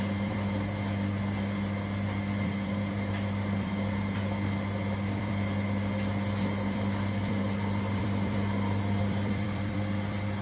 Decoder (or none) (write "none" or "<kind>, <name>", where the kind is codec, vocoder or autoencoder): vocoder, BigVGAN v2